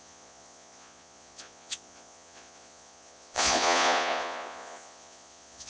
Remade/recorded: remade